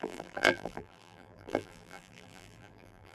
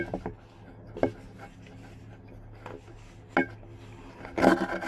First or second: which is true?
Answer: second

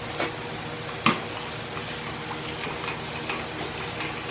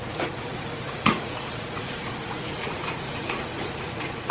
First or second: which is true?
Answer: first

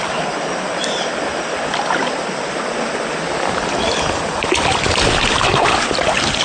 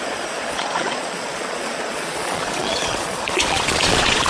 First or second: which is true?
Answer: first